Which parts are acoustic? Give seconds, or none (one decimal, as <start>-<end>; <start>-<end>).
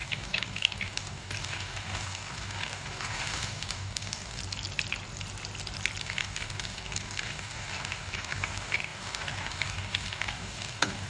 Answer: 4.4-6.0